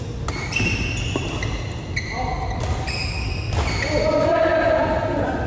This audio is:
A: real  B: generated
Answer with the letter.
A